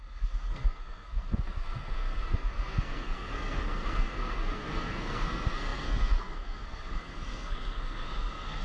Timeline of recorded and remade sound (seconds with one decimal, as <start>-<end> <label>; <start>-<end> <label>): 0.0-8.6 remade